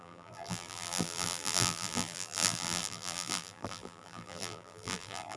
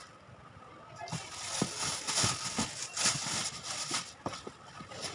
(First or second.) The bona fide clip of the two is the second